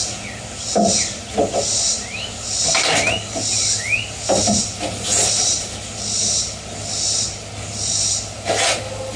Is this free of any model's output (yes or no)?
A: yes